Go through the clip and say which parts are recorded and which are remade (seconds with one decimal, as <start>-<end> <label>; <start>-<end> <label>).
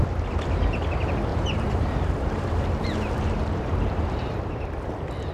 0.0-1.3 recorded; 1.3-4.5 remade; 4.5-5.3 recorded